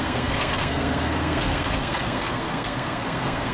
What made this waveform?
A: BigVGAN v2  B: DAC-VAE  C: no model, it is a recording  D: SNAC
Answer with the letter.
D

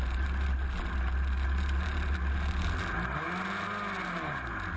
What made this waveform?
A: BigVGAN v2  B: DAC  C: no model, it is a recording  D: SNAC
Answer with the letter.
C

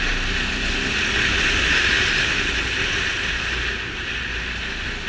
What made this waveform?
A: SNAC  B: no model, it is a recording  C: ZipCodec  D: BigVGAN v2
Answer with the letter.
B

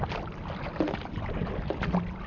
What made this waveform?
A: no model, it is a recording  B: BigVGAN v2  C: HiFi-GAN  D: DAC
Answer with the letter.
A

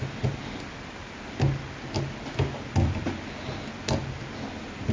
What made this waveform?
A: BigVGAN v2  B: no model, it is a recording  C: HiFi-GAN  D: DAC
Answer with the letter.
B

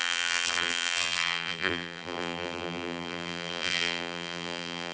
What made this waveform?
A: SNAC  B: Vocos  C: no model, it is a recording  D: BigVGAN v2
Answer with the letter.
D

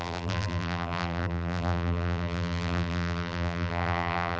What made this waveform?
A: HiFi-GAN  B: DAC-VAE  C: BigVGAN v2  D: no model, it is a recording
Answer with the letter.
C